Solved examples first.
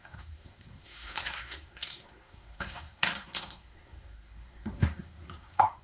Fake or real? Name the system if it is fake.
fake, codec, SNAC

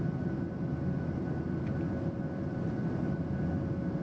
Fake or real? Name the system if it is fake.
real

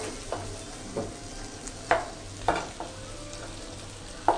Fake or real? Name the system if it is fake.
real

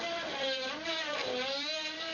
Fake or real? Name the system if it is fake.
fake, vocoder, BigVGAN v2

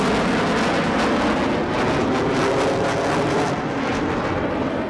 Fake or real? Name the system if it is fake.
real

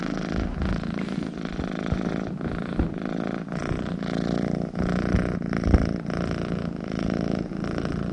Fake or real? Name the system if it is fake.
real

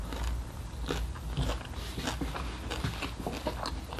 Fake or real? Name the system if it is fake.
real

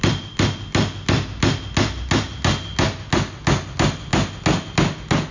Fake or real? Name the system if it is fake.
real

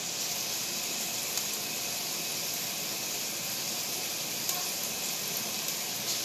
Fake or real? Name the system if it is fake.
real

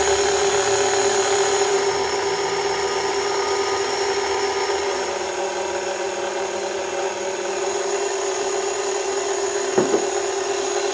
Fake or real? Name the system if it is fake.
real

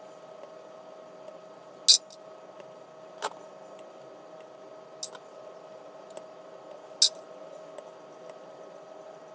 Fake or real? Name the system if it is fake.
real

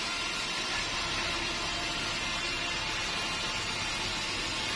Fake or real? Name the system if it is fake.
real